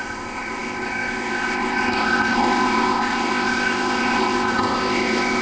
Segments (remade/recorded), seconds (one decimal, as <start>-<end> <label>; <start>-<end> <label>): 0.0-5.4 remade

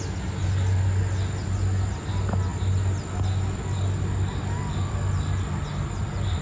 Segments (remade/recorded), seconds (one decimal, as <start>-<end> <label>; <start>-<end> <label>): 0.0-6.4 recorded

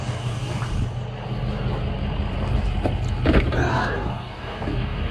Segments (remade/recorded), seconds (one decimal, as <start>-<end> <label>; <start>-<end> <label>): 0.0-0.6 remade; 0.6-3.7 recorded; 3.7-5.1 remade

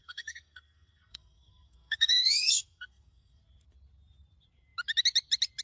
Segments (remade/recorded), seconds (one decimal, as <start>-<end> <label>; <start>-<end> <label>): 0.0-3.4 remade; 3.4-5.6 recorded

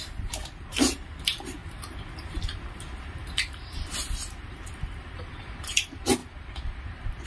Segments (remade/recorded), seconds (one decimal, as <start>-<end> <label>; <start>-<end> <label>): 0.0-1.6 remade; 1.6-3.0 recorded; 3.0-6.2 remade; 6.2-6.8 recorded; 6.8-7.3 remade

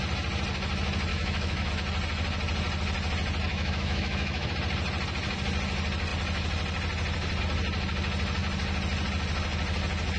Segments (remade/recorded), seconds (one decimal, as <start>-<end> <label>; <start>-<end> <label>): 0.0-1.1 recorded; 1.1-1.7 remade; 1.7-3.5 recorded; 3.5-4.5 remade; 4.5-10.2 recorded